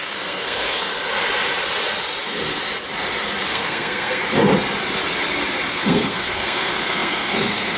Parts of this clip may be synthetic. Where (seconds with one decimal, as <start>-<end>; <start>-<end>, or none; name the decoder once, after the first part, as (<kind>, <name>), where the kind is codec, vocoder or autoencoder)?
0.0-0.9 (codec, SNAC); 3.5-4.2; 5.7-7.8

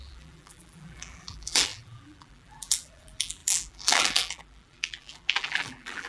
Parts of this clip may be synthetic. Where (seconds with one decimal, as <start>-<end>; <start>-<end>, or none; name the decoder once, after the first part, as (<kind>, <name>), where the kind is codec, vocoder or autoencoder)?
0.0-6.1 (vocoder, BigVGAN v2)

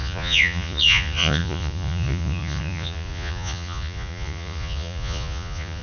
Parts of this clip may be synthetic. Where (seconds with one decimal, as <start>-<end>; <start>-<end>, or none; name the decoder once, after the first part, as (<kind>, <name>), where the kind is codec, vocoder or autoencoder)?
0.0-5.8 (vocoder, Vocos)

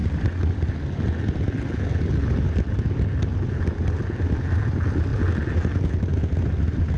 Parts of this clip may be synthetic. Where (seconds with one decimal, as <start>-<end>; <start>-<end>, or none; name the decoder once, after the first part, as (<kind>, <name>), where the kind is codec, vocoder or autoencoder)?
none

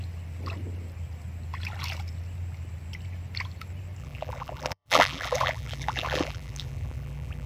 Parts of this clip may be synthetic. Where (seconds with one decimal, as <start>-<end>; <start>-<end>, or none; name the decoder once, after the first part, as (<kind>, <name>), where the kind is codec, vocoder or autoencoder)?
4.0-7.5 (vocoder, BigVGAN v2)

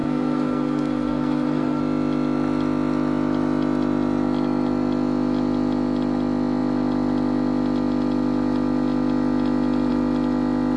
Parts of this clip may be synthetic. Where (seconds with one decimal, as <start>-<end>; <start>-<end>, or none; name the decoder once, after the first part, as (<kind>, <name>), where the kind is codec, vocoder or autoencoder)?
0.0-1.8 (codec, SNAC)

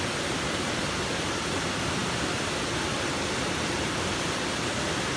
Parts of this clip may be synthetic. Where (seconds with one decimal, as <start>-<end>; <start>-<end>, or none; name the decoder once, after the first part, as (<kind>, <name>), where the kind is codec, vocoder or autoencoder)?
none